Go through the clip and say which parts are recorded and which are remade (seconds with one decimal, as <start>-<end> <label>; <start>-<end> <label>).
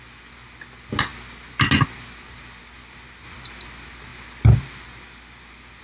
0.0-5.8 recorded